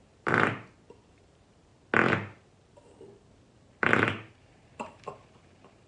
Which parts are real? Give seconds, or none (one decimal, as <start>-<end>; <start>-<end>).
1.7-3.8